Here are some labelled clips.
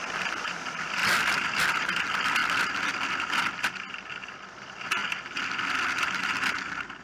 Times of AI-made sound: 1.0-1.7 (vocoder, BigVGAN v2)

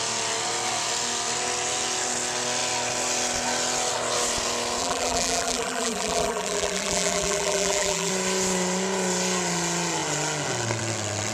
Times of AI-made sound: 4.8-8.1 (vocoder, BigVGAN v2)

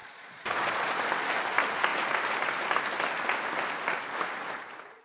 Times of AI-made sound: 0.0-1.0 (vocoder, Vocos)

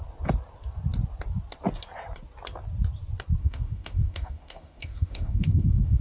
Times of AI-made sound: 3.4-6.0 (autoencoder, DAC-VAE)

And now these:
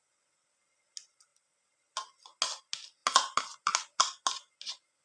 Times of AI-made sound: none